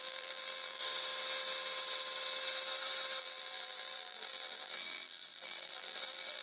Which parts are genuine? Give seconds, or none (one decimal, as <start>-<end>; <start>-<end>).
0.8-3.2

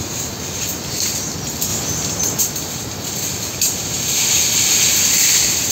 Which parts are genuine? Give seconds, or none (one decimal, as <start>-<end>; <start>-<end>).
0.0-5.7

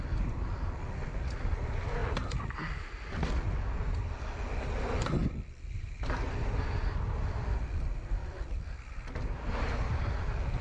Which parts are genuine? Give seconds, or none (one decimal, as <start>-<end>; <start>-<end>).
0.0-2.0; 3.3-5.2; 6.6-8.2; 8.7-10.6